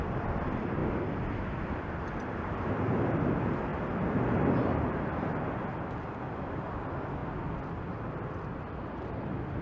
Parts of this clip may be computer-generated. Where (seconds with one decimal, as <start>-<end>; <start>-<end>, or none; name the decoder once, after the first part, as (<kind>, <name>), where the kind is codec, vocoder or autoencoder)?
0.0-3.7 (vocoder, BigVGAN v2); 6.4-7.2; 8.0-9.6